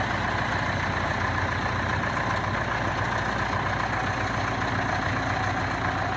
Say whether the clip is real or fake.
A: real